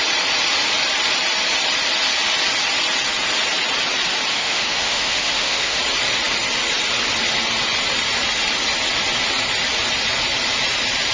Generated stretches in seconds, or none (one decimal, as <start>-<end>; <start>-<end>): 4.3-5.8